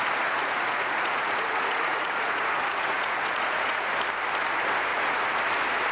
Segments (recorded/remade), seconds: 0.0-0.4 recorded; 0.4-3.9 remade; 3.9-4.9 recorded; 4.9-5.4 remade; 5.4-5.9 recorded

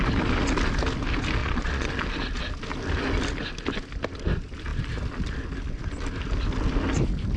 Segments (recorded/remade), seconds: 0.0-1.4 recorded; 1.4-1.9 remade; 1.9-7.4 recorded

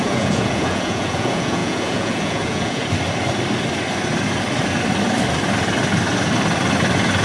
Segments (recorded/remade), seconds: 0.0-2.8 remade; 2.8-7.2 recorded